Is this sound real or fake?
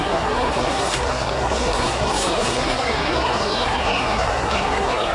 fake